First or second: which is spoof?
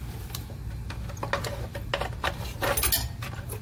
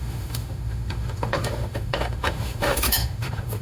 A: second